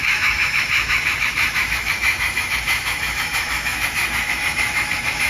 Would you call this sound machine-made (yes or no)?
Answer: yes